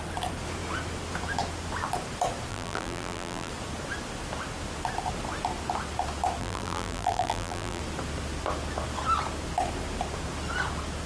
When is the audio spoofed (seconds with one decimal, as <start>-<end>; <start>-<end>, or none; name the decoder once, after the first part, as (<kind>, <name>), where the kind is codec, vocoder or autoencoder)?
2.5-3.5 (vocoder, BigVGAN v2); 6.4-7.8